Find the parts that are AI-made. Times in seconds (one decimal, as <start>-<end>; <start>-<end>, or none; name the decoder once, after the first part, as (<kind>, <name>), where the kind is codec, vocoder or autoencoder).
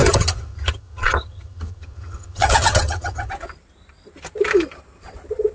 0.0-3.3 (vocoder, HiFi-GAN)